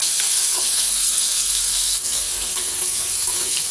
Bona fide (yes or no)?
no